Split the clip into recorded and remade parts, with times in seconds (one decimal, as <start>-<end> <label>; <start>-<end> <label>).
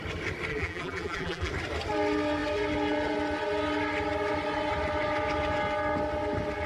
0.0-0.5 recorded; 0.5-1.5 remade; 1.5-6.7 recorded